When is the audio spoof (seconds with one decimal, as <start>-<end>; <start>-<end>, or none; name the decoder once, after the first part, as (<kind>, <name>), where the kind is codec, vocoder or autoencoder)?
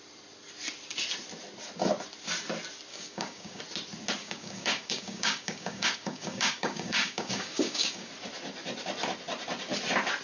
2.9-3.6 (codec, DAC); 4.2-8.1